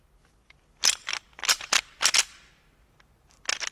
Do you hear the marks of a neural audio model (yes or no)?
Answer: no